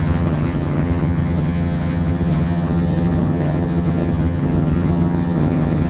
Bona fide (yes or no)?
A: no